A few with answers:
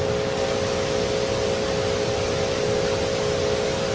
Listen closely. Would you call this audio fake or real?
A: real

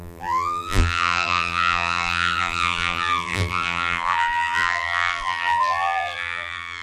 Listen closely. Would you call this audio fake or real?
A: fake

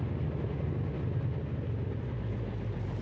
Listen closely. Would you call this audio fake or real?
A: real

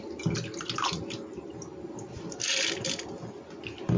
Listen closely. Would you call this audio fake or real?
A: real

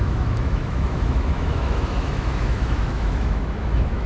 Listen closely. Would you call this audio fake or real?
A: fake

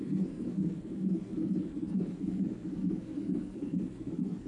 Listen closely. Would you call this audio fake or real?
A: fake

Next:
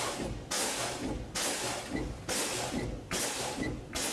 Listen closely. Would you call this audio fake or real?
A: real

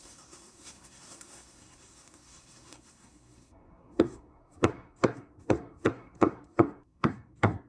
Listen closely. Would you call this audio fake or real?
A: fake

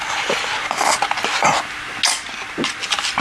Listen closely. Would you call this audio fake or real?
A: real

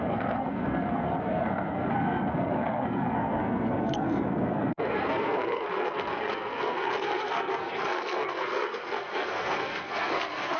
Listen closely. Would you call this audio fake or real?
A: fake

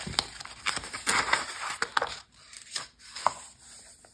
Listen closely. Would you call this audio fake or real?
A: real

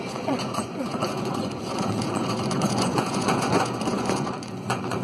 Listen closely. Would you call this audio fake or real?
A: fake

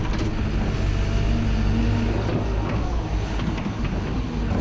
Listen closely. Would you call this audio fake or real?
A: real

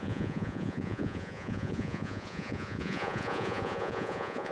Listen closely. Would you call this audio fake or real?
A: fake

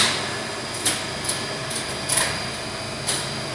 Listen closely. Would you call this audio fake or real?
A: real